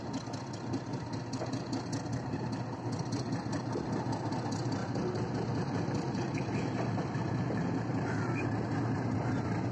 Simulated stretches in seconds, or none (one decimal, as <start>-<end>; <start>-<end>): 4.8-8.4